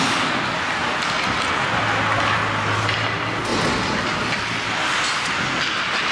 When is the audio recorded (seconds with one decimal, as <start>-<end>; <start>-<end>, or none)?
0.0-0.8; 1.8-6.1